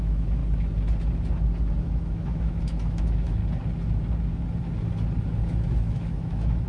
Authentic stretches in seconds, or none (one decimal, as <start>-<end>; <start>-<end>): 0.4-1.8; 3.4-5.7